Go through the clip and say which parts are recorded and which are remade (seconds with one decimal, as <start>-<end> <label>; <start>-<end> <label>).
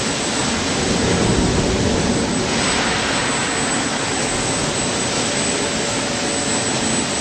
0.0-0.4 recorded; 0.4-3.3 remade; 3.3-4.6 recorded; 4.6-5.5 remade; 5.5-7.2 recorded